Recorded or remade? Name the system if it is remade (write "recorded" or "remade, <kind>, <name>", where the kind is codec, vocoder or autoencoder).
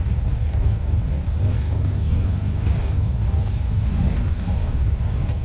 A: remade, codec, DAC